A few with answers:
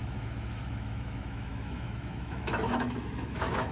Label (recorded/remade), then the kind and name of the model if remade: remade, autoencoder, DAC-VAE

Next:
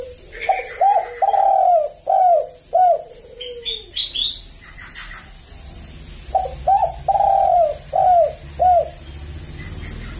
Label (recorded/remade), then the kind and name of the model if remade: recorded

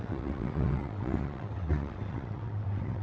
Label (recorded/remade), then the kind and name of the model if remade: remade, vocoder, WaveNeXt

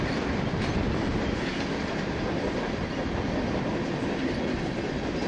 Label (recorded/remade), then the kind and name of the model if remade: recorded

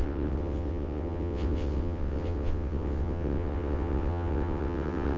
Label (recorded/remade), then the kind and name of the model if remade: remade, vocoder, WaveNeXt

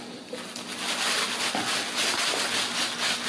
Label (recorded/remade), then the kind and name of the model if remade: recorded